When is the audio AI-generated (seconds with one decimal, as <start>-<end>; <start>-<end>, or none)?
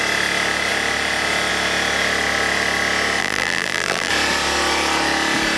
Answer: 3.2-4.1